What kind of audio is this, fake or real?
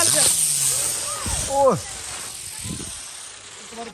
real